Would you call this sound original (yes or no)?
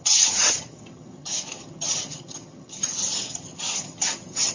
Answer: no